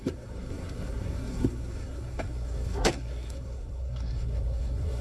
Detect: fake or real fake